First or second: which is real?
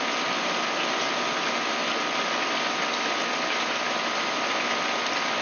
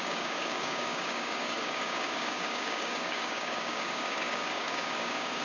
first